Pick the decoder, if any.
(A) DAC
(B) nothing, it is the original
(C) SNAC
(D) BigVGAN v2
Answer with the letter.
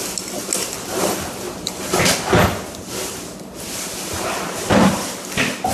B